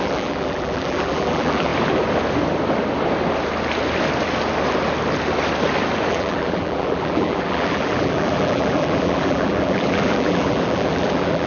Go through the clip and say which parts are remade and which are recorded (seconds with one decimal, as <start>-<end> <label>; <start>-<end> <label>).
0.0-1.7 remade; 1.7-6.1 recorded; 6.1-11.5 remade